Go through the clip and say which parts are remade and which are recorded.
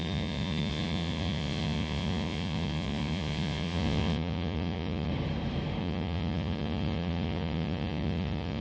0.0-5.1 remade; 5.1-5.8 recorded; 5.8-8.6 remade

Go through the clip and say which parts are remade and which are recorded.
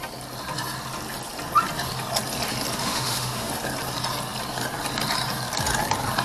0.0-2.8 recorded; 2.8-3.5 remade; 3.5-6.2 recorded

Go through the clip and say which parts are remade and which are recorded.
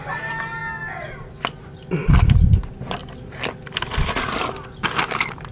0.0-5.5 recorded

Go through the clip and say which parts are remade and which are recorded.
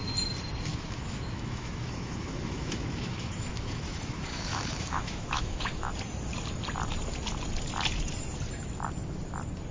0.0-0.7 recorded; 0.7-5.9 remade; 5.9-9.7 recorded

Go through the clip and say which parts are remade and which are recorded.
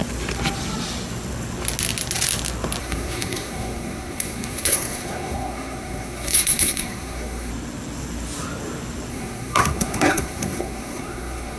0.0-2.8 recorded; 2.8-7.5 remade; 7.5-9.1 recorded; 9.1-11.6 remade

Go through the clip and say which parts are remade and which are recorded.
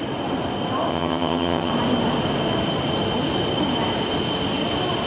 0.0-0.9 recorded; 0.9-1.7 remade; 1.7-5.1 recorded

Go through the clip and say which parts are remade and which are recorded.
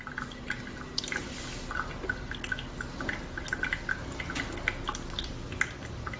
0.0-6.2 recorded